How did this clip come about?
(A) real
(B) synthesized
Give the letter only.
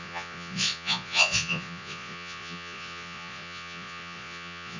B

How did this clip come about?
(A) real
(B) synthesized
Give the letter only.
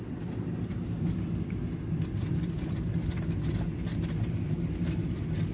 A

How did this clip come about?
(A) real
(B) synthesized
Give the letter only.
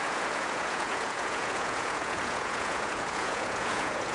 B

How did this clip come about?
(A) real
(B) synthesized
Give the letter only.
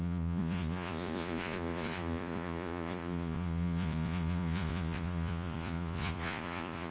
B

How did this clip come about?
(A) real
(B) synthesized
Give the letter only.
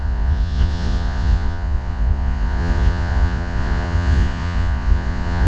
B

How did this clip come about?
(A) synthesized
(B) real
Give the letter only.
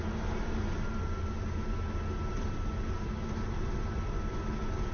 B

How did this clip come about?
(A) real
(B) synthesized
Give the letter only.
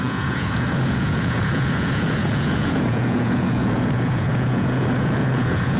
B